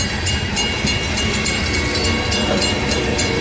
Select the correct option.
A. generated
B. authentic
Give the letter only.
A